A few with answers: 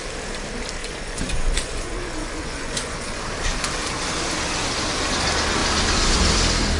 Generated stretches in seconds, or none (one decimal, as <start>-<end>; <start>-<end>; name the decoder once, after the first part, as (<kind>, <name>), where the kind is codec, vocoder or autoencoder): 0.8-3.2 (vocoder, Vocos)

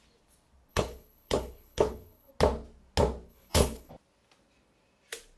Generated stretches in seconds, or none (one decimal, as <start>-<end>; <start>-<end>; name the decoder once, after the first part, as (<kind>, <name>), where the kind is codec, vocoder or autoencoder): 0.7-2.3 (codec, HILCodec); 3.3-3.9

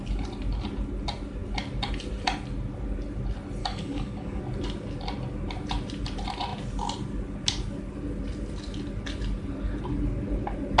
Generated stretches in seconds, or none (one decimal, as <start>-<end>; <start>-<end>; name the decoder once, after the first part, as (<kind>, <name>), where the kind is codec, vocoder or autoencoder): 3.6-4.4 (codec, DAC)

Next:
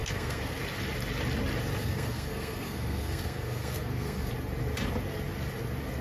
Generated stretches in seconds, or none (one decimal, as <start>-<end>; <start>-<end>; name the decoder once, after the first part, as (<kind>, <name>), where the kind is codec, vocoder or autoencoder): 0.0-0.6 (codec, SNAC); 1.8-4.3